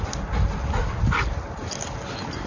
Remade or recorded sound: recorded